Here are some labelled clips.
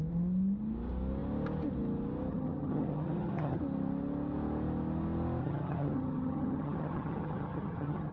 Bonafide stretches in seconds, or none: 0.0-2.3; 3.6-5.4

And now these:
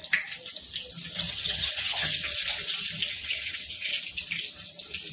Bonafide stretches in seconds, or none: 0.0-1.3; 2.3-3.1; 3.9-5.1

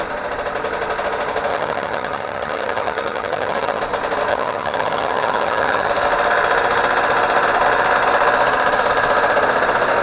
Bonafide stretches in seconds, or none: 0.0-1.5; 3.8-4.3; 5.9-10.0

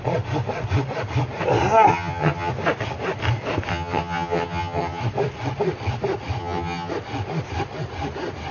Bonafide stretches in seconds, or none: 0.0-1.9; 2.5-3.7; 5.0-6.4; 6.9-8.5

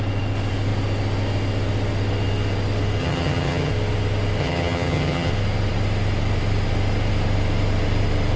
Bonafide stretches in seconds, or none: 0.0-3.0; 3.7-4.4; 5.3-8.4

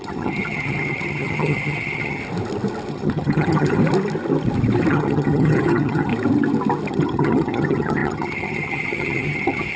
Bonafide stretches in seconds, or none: 2.2-2.9; 3.8-4.9; 6.1-6.9

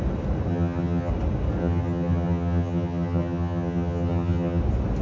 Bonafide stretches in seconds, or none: 0.0-0.5; 1.1-1.6; 4.6-5.0